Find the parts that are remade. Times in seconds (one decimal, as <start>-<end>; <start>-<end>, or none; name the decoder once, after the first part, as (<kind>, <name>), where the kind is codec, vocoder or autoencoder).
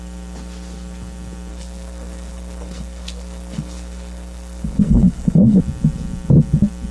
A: 1.5-5.6 (codec, SNAC)